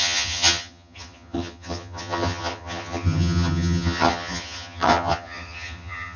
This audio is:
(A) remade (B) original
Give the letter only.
A